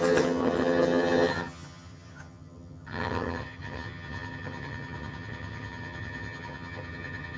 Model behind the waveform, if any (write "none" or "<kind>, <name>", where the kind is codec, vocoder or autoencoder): vocoder, HiFi-GAN